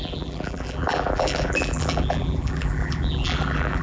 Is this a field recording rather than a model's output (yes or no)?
no